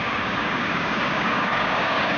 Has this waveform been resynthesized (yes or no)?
yes